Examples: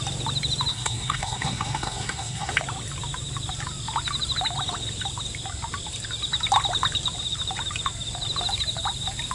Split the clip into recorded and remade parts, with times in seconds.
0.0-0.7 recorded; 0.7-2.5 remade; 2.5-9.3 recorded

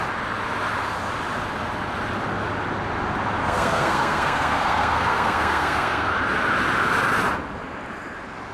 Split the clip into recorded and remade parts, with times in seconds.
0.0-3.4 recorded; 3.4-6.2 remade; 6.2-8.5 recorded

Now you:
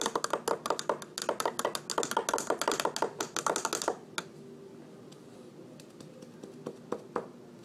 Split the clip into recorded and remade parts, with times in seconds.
0.0-7.6 recorded